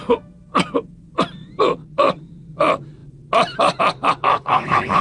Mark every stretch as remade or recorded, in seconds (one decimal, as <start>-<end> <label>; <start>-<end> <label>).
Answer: 0.0-4.3 recorded; 4.3-5.0 remade